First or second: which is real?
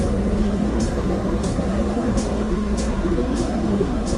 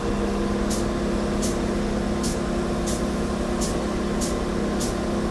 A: second